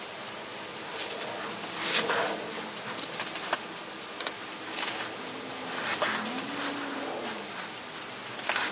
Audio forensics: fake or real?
real